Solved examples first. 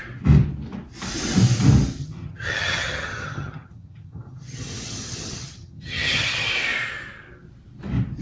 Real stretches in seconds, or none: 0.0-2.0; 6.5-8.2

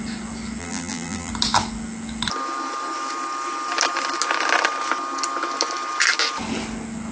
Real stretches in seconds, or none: 0.0-0.6; 1.3-7.1

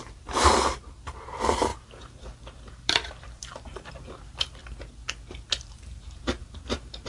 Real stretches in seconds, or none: 4.6-5.3

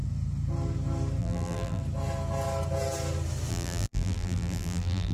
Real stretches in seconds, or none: 0.0-1.2; 1.8-3.5

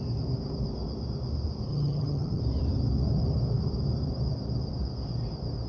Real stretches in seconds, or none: 0.0-1.7; 2.4-5.7

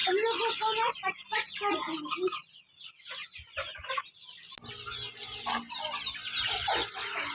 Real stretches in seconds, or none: 0.0-7.3

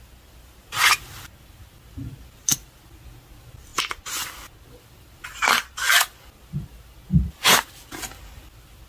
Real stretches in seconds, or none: 0.0-8.9